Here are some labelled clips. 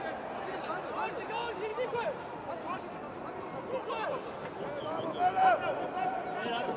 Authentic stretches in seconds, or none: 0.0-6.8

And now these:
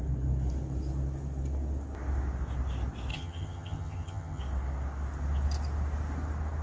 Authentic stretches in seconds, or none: 0.0-3.1; 4.4-6.6

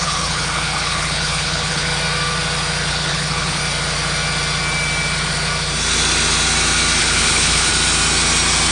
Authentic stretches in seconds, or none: 1.9-2.9; 3.6-7.0; 7.7-8.7

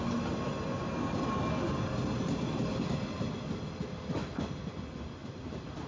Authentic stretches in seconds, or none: 0.0-5.2

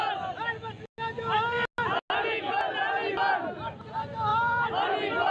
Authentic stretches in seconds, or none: 0.0-4.3